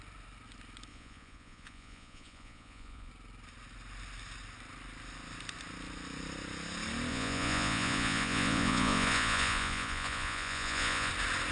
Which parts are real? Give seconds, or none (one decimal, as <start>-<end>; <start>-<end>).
0.0-0.9; 3.1-7.1; 11.1-11.5